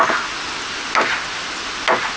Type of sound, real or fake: real